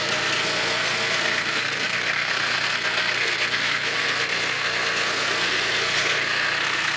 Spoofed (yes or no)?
yes